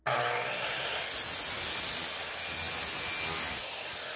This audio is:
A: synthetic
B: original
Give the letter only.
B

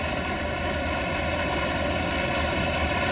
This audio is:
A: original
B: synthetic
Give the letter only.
A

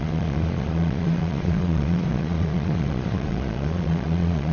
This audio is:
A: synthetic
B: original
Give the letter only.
A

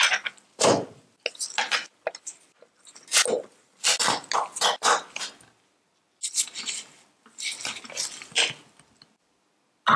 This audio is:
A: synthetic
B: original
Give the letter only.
B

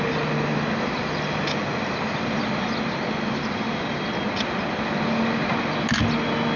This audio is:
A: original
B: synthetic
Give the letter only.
A